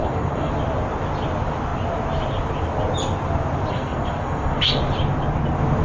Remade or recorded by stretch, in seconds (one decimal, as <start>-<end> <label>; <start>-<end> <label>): 0.0-0.5 remade; 0.5-3.7 recorded; 3.7-4.8 remade; 4.8-5.8 recorded